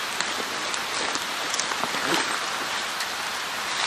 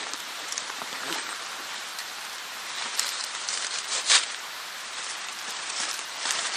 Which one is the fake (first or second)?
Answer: second